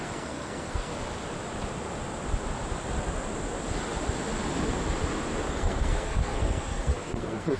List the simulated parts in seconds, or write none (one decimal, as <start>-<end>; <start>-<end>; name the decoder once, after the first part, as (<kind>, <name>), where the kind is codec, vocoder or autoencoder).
0.0-0.9 (codec, SNAC); 5.5-7.6